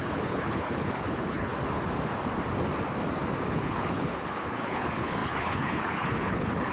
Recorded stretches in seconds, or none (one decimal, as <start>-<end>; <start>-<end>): 1.5-3.5